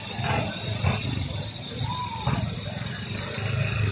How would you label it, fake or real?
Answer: real